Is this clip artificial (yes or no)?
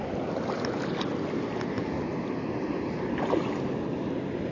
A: no